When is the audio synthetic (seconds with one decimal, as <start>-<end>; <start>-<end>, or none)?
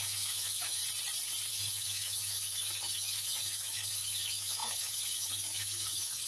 0.0-0.8; 1.5-6.3